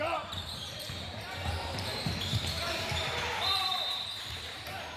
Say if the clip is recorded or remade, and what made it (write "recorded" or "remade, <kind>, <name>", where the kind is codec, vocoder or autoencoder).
remade, vocoder, BigVGAN v2